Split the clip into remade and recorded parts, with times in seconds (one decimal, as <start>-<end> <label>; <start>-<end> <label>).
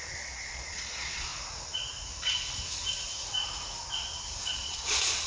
0.0-1.3 remade; 1.3-4.5 recorded; 4.5-5.3 remade